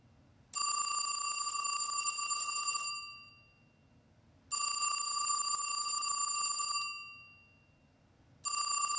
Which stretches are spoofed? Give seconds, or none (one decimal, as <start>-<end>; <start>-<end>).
1.5-3.3